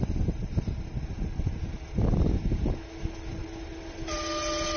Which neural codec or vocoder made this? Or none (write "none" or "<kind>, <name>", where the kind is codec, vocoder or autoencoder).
none